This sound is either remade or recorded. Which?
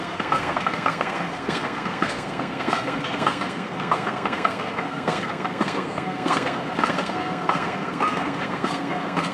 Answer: remade